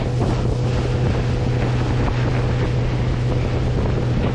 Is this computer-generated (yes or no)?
no